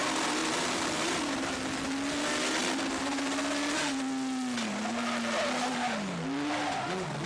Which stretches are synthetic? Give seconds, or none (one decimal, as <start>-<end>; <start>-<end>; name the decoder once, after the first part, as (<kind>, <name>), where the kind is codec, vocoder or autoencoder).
0.4-1.5 (vocoder, BigVGAN v2)